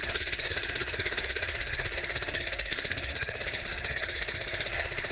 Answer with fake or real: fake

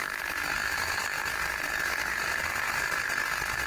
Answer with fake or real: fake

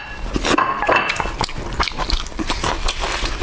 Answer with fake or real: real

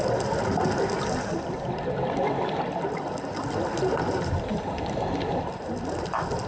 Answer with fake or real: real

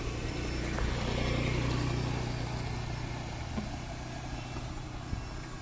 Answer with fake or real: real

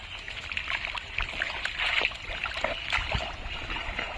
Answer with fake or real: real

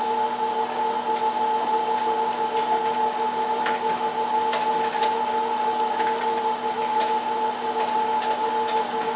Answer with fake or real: real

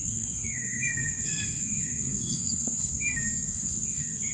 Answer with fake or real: fake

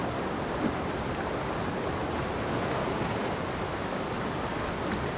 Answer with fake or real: real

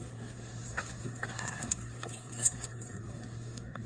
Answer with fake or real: fake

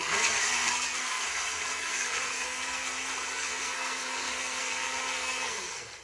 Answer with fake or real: fake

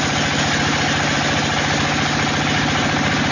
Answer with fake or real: real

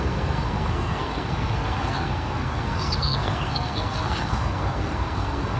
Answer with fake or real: fake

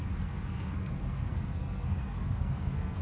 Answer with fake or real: fake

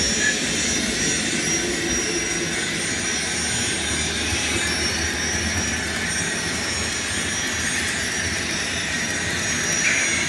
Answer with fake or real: real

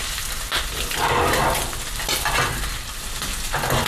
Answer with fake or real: real